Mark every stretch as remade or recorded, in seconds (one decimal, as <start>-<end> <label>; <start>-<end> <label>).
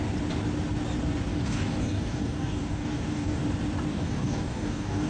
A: 0.0-1.3 recorded; 1.3-3.4 remade; 3.4-3.9 recorded; 3.9-5.1 remade